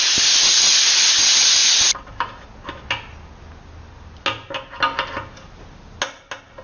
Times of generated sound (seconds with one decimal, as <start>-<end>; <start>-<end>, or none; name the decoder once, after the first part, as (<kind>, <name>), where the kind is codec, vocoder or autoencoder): none